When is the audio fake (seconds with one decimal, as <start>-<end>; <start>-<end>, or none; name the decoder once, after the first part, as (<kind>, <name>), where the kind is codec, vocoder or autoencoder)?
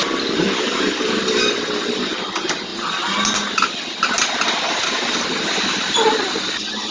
0.0-2.7 (vocoder, BigVGAN v2); 4.5-6.9